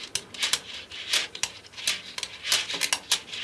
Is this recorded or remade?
recorded